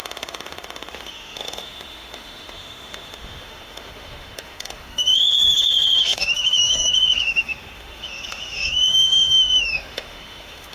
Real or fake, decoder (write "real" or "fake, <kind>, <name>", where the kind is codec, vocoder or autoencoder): fake, autoencoder, DAC-VAE